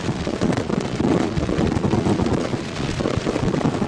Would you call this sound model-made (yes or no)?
yes